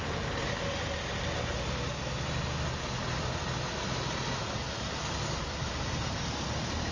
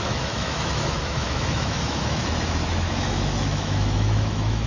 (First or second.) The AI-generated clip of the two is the second